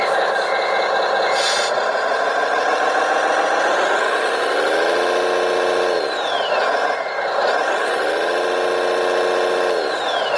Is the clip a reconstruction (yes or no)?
no